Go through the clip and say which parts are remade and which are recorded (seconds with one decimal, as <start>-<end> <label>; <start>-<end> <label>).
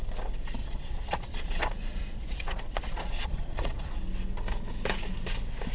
0.0-0.6 recorded; 0.6-4.0 remade; 4.0-5.7 recorded